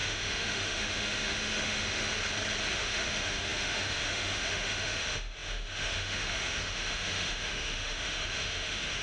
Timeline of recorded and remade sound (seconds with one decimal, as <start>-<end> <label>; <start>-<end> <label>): 0.0-2.1 remade; 2.1-2.7 recorded; 2.7-9.0 remade